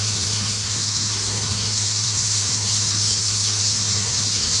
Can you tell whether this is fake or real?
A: fake